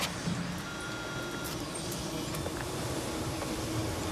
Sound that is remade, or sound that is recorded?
recorded